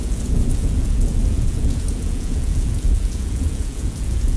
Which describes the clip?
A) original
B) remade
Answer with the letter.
B